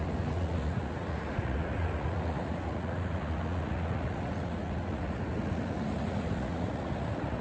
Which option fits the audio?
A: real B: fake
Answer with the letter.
B